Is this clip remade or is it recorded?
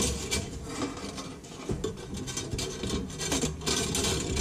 recorded